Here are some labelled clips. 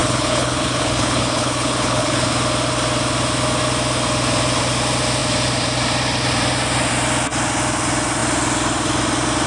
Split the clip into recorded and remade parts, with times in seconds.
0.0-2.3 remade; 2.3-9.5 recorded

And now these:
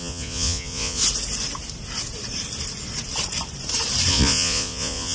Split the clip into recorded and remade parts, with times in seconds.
0.0-1.0 remade; 1.0-4.1 recorded; 4.1-5.1 remade

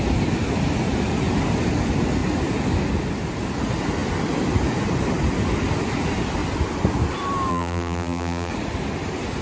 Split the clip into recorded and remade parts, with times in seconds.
0.0-7.5 recorded; 7.5-8.5 remade; 8.5-9.4 recorded

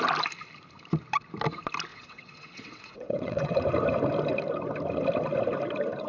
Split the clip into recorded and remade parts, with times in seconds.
0.0-1.9 recorded; 1.9-3.6 remade; 3.6-6.1 recorded

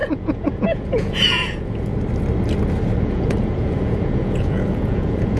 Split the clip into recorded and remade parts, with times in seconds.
0.0-1.9 remade; 1.9-3.0 recorded; 3.0-5.4 remade

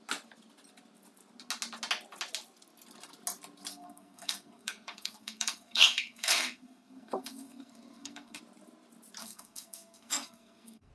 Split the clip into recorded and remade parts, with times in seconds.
0.0-3.7 recorded; 3.7-8.4 remade; 8.4-9.2 recorded; 9.2-10.9 remade

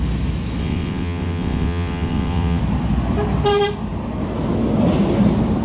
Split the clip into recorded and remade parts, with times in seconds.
0.0-0.6 recorded; 0.6-2.6 remade; 2.6-5.6 recorded

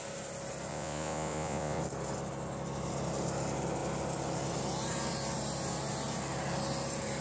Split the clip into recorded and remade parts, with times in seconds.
0.0-0.7 recorded; 0.7-1.8 remade; 1.8-7.2 recorded